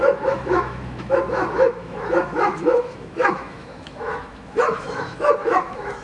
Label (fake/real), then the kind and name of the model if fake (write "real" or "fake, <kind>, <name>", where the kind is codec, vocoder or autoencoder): fake, autoencoder, DAC-VAE